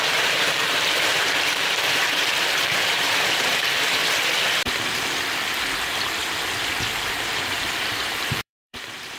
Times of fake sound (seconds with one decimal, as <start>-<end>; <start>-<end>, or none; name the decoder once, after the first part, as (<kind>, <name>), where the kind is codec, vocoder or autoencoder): 0.0-4.0 (vocoder, BigVGAN v2); 7.1-9.2